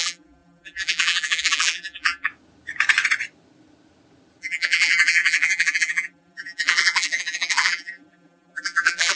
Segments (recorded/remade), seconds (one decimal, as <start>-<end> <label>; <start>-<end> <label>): 0.0-2.3 remade; 2.3-4.4 recorded; 4.4-9.2 remade